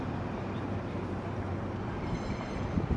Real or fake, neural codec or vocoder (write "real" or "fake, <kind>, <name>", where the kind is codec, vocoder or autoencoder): fake, vocoder, BigVGAN v2